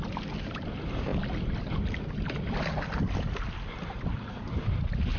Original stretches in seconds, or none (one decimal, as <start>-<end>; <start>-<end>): 0.0-5.2